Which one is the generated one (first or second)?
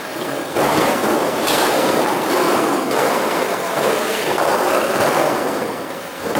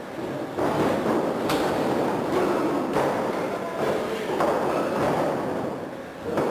first